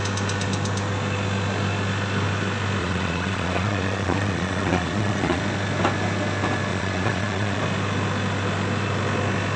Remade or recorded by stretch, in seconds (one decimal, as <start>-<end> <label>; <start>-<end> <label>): 0.0-2.8 recorded; 2.8-5.4 remade; 5.4-6.7 recorded; 6.7-7.6 remade; 7.6-9.6 recorded